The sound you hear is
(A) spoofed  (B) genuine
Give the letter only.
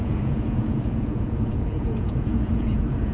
A